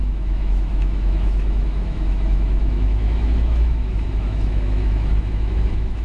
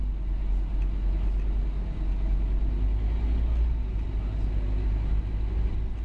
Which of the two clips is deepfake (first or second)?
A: first